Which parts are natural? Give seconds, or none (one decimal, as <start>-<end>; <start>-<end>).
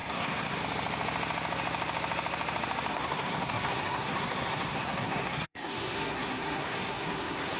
0.6-2.9